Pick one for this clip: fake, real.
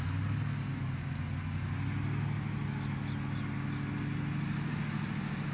real